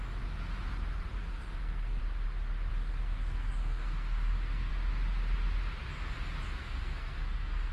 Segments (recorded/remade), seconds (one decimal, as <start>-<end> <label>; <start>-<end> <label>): 0.0-1.1 recorded; 1.1-2.0 remade; 2.0-2.7 recorded; 2.7-4.7 remade; 4.7-6.6 recorded; 6.6-7.7 remade